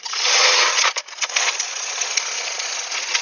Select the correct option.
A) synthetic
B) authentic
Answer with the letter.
A